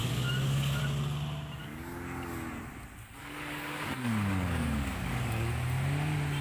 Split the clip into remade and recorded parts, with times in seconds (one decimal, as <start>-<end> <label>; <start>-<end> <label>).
0.0-0.8 remade; 0.8-1.6 recorded; 1.6-2.6 remade; 2.6-3.2 recorded; 3.2-5.5 remade; 5.5-6.4 recorded

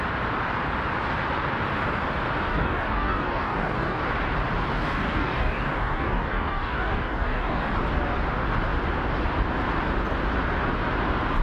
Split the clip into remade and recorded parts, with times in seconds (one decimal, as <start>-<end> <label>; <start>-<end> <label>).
0.0-2.5 recorded; 2.5-4.0 remade; 4.0-4.7 recorded; 4.7-7.7 remade; 7.7-11.4 recorded

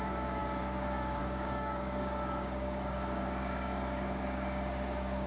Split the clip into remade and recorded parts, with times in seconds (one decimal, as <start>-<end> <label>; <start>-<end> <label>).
0.0-5.3 remade

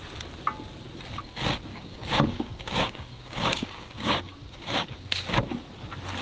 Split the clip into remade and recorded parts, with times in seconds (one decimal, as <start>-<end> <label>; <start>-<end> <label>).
0.0-1.7 recorded; 1.7-5.4 remade; 5.4-6.2 recorded

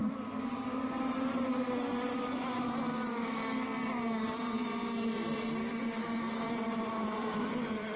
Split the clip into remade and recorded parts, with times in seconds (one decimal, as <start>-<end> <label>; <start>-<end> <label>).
0.0-3.1 recorded; 3.1-3.7 remade; 3.7-5.6 recorded; 5.6-6.3 remade; 6.3-8.0 recorded

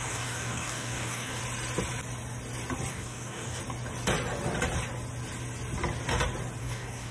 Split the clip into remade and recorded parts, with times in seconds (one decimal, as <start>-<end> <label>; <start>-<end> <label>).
0.0-1.4 remade; 1.4-2.9 recorded; 2.9-3.6 remade; 3.6-6.6 recorded; 6.6-7.1 remade

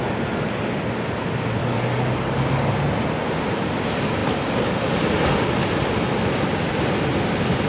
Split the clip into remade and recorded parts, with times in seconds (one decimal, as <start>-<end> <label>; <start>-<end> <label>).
0.0-1.6 recorded; 1.6-2.7 remade; 2.7-7.7 recorded

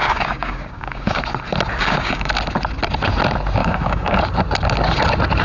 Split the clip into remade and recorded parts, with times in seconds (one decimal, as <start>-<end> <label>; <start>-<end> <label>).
0.0-1.2 remade; 1.2-1.8 recorded; 1.8-2.3 remade; 2.3-3.6 recorded; 3.6-4.2 remade; 4.2-5.4 recorded